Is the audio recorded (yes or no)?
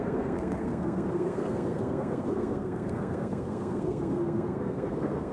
no